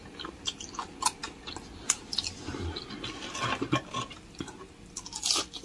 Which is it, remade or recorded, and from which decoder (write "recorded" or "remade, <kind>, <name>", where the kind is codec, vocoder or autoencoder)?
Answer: recorded